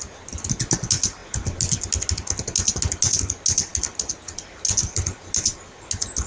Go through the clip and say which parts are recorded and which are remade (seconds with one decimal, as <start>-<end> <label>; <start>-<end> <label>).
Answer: 0.0-6.3 recorded